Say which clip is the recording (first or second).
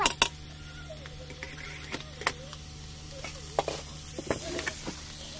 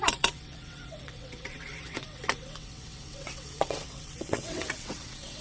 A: first